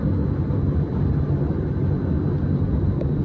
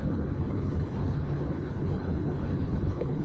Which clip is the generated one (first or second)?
second